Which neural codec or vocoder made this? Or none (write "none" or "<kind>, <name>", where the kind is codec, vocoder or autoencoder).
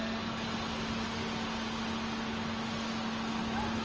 none